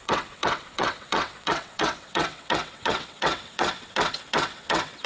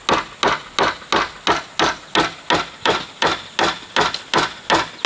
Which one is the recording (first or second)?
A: second